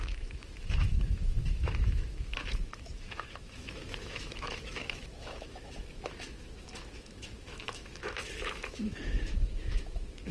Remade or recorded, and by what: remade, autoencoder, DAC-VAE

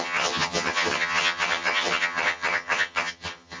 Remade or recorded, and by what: remade, vocoder, HiFi-GAN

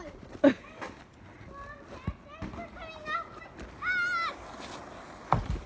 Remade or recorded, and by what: recorded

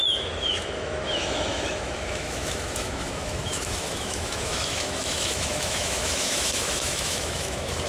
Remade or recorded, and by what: remade, autoencoder, DAC-VAE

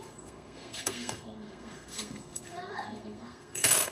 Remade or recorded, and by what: remade, codec, SNAC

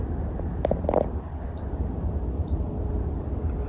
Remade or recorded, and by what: recorded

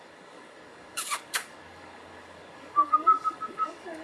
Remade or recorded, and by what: remade, codec, DAC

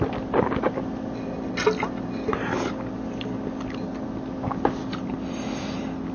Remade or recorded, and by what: recorded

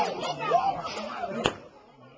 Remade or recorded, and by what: recorded